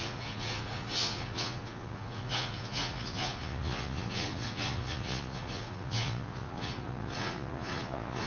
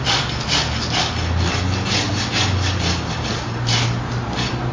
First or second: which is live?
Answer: second